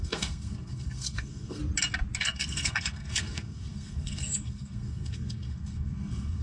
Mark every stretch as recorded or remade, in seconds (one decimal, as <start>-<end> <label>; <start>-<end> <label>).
0.0-1.6 remade; 1.6-2.2 recorded; 2.2-6.4 remade